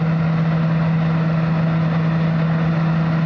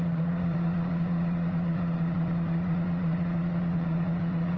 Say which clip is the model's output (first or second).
second